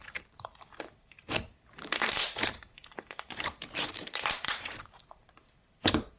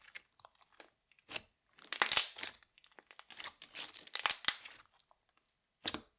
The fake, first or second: first